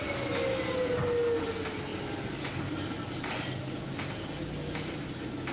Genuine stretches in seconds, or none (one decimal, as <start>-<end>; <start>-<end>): 0.0-5.5